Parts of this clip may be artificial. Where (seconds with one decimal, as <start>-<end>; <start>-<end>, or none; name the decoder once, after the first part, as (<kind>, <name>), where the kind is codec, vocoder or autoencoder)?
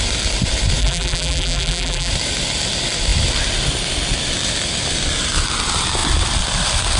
0.8-2.1 (vocoder, BigVGAN v2)